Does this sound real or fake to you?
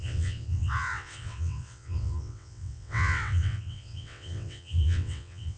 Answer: fake